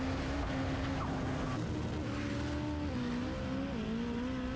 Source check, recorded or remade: recorded